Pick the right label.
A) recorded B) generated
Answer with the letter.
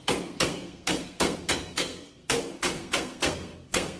B